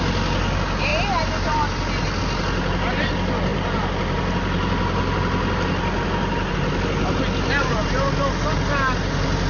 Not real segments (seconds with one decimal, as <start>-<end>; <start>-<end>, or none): none